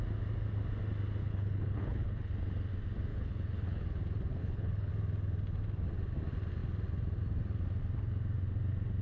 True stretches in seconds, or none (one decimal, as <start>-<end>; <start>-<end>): 0.0-1.2; 2.3-3.1; 4.0-4.4; 4.9-9.0